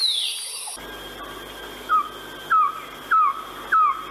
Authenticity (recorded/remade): recorded